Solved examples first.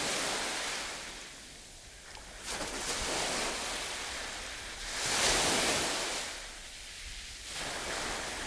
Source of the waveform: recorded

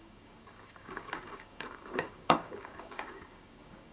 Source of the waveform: remade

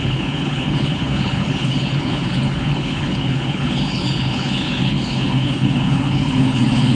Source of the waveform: remade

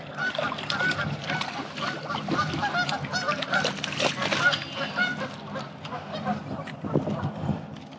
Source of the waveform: recorded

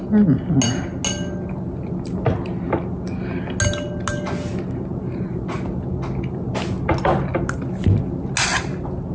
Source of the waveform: recorded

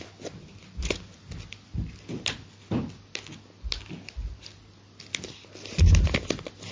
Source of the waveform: recorded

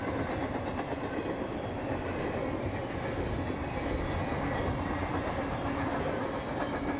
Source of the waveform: recorded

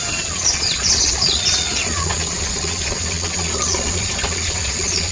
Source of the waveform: remade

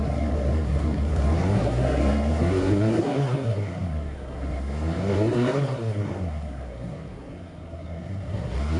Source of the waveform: remade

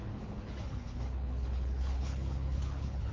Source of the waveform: remade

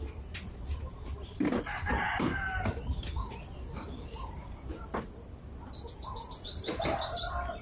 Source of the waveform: recorded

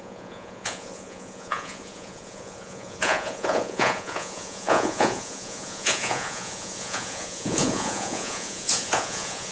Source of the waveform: remade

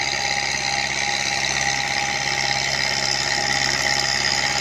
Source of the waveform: recorded